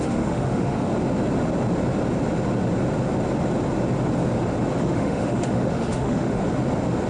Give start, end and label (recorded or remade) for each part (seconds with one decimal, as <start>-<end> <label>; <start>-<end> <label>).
0.0-0.9 remade; 0.9-4.8 recorded; 4.8-6.4 remade; 6.4-7.1 recorded